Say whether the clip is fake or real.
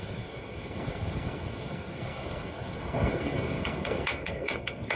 fake